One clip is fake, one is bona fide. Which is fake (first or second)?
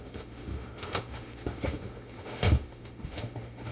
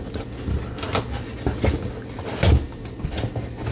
first